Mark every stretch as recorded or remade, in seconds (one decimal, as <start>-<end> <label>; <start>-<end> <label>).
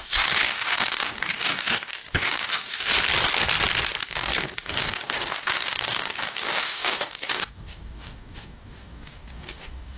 0.0-2.9 remade; 2.9-4.0 recorded; 4.0-10.0 remade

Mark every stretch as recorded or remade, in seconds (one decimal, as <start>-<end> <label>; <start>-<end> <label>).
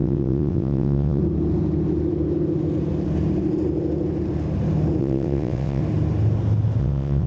0.0-1.2 remade; 1.2-5.0 recorded; 5.0-5.8 remade; 5.8-6.8 recorded; 6.8-7.3 remade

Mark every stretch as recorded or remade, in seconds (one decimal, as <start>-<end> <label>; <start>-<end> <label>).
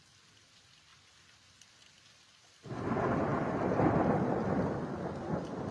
0.0-3.3 recorded; 3.3-4.6 remade; 4.6-5.7 recorded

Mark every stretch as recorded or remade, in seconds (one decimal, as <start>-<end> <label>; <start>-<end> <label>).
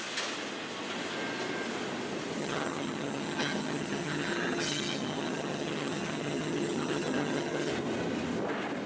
0.0-2.4 recorded; 2.4-7.7 remade; 7.7-8.9 recorded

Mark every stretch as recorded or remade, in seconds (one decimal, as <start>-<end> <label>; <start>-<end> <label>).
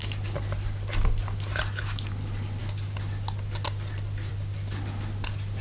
0.0-5.6 recorded